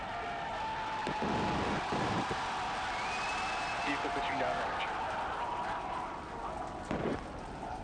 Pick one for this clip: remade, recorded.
recorded